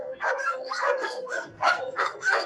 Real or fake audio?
fake